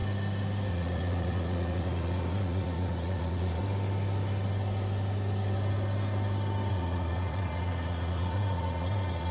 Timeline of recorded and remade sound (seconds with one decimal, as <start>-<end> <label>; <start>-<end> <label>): 0.0-0.7 recorded; 0.7-3.6 remade; 3.6-6.7 recorded; 6.7-9.3 remade

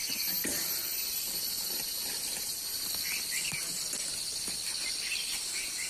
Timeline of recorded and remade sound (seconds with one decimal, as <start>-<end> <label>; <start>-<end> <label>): 0.0-5.9 recorded

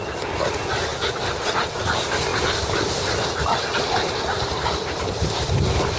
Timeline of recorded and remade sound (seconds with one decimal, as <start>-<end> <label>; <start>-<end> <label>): 0.0-6.0 recorded

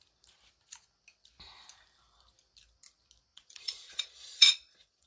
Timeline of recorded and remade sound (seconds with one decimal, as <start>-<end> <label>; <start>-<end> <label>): 0.0-3.3 recorded; 3.3-5.1 remade

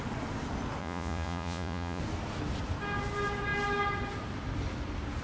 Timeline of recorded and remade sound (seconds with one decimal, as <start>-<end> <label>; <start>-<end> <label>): 0.0-0.8 recorded; 0.8-2.0 remade; 2.0-5.2 recorded

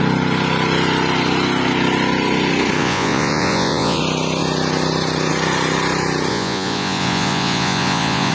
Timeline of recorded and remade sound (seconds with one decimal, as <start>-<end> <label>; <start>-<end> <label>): 0.0-2.8 recorded; 2.8-4.0 remade; 4.0-6.3 recorded; 6.3-8.3 remade